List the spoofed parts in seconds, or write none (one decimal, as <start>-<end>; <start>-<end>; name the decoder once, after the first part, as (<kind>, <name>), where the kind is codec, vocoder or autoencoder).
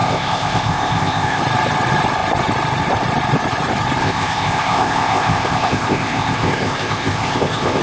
0.0-1.4 (codec, ZipCodec); 4.0-7.8